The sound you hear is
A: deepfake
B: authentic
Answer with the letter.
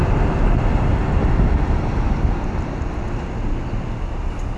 B